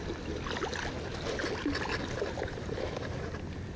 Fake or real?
real